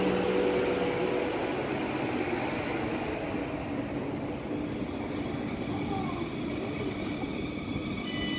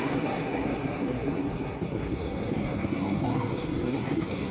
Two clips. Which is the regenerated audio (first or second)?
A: second